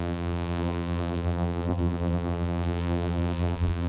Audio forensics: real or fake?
fake